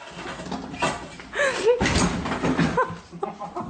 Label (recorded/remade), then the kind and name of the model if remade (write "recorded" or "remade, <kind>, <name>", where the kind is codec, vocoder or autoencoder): recorded